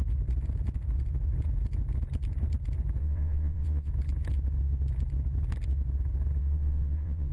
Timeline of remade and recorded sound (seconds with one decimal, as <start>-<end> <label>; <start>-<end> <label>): 0.0-3.0 recorded; 3.0-3.9 remade; 3.9-6.4 recorded; 6.4-7.3 remade